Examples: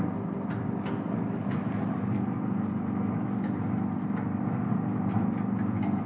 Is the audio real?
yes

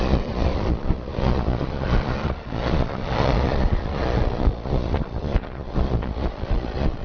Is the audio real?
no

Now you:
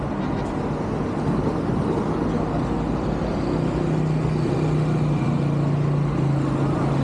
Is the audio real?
yes